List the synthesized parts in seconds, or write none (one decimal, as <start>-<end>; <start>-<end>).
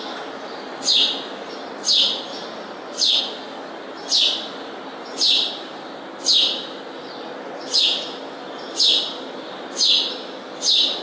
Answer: 2.3-3.2